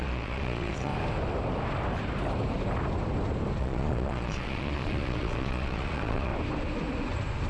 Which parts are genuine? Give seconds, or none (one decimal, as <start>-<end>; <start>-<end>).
0.9-3.6; 6.3-7.5